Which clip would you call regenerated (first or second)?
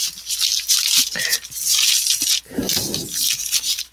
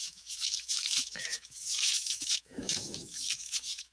second